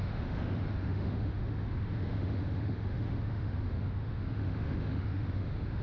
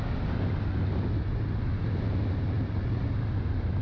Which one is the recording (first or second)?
second